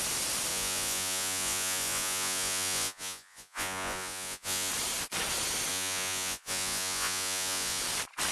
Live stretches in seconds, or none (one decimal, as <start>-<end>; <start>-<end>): 0.0-0.5; 4.7-5.7; 7.8-8.3